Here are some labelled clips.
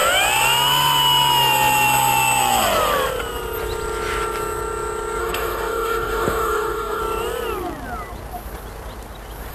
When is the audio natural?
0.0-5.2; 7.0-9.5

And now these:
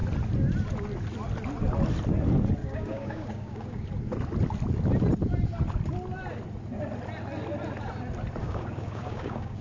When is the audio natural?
0.0-2.6; 3.9-8.4

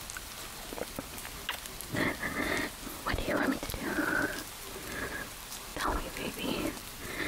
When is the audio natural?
0.0-7.3

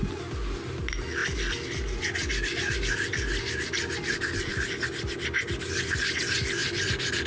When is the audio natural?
0.0-7.3

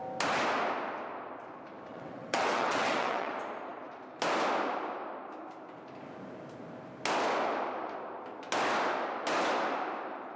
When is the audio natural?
0.0-1.9; 3.3-10.4

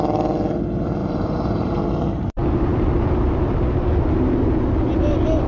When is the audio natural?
0.0-1.0; 1.8-2.7; 4.7-5.5